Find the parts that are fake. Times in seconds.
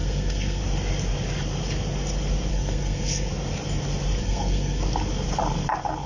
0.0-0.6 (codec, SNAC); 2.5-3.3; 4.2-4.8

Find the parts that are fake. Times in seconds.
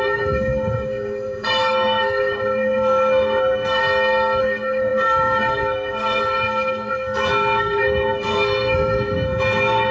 0.0-3.8 (codec, SNAC); 4.4-9.9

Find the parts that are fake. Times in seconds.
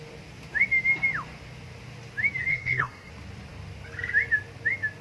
2.5-3.1 (codec, SNAC)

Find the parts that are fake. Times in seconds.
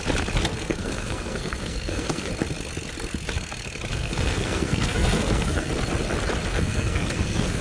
0.5-2.3 (codec, SNAC); 3.9-5.7; 6.5-7.6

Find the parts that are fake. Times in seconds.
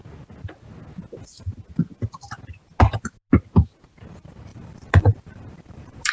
4.5-6.1 (vocoder, BigVGAN v2)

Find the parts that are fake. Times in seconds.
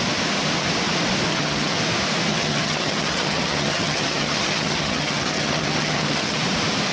1.3-1.8 (vocoder, HiFi-GAN); 2.3-6.4